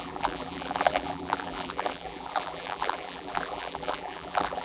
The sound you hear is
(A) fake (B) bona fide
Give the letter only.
A